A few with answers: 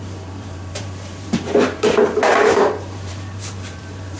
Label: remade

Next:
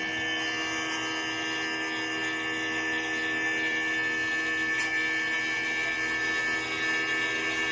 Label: recorded